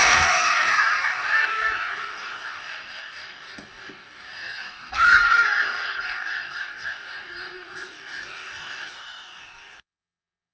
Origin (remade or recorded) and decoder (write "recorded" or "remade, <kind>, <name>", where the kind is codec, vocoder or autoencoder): remade, codec, DAC